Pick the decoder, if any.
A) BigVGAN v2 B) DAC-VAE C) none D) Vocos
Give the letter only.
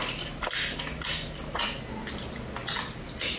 C